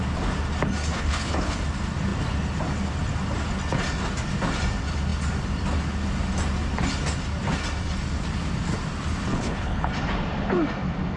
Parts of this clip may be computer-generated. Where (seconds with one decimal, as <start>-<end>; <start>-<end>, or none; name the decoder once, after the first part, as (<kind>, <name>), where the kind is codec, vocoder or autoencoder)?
0.9-1.6 (codec, HILCodec); 9.3-9.9

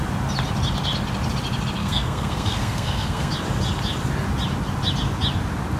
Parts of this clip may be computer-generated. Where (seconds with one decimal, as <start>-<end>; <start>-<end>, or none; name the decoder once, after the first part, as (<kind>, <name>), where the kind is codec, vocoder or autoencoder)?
1.8-3.3 (codec, SNAC)

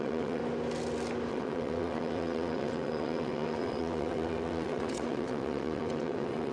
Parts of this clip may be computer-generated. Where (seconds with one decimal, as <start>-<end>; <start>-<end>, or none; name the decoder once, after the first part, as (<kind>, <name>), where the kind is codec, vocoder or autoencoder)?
0.0-0.4 (vocoder, WaveNeXt); 1.3-6.5

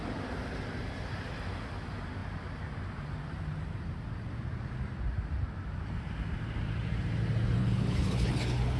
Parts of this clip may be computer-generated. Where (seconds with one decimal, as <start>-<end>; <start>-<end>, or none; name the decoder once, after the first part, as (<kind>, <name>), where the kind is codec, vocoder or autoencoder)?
7.6-8.8 (codec, HILCodec)

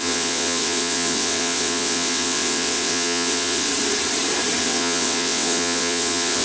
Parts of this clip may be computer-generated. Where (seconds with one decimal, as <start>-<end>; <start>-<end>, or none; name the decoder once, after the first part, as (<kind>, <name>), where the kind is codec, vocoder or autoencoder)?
0.0-3.7 (vocoder, WaveNeXt); 4.6-6.4

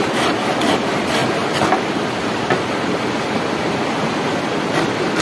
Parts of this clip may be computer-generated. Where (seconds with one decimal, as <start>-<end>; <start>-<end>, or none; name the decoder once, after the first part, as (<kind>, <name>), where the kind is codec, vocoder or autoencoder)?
none

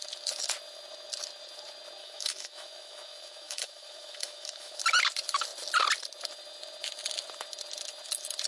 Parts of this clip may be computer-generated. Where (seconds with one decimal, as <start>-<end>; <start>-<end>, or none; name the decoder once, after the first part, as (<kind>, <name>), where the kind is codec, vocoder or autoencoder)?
2.0-4.8 (autoencoder, DAC-VAE)

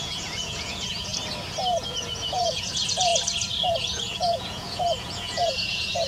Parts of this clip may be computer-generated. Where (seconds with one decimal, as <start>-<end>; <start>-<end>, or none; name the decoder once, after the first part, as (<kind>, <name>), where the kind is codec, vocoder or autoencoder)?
0.0-1.1 (vocoder, Vocos); 1.7-3.1; 3.7-6.1